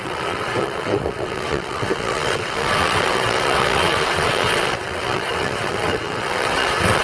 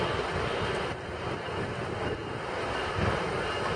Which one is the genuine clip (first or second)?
second